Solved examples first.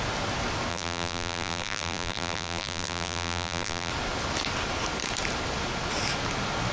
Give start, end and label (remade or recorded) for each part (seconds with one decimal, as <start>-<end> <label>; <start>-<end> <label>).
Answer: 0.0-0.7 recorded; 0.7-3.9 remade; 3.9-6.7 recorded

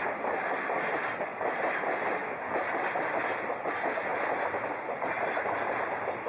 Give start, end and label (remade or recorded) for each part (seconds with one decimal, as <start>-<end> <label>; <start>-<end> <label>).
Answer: 0.0-4.1 recorded; 4.1-6.3 remade

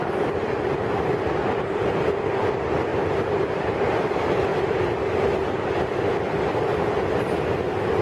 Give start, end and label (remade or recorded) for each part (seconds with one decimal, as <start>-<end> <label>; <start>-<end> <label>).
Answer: 0.0-2.9 recorded; 2.9-3.8 remade; 3.8-8.0 recorded

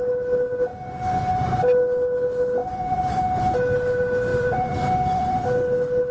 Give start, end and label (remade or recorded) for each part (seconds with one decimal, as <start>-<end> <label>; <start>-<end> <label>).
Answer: 0.0-2.6 recorded; 2.6-3.5 remade; 3.5-4.3 recorded; 4.3-5.4 remade; 5.4-6.1 recorded